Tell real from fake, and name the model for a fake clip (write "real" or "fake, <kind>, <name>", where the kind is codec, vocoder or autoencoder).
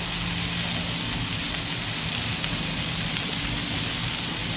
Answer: real